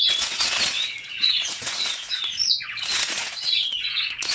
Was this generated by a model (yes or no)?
yes